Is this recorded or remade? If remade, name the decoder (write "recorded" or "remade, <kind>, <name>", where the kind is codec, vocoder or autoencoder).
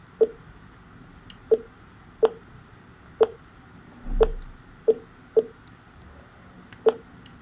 recorded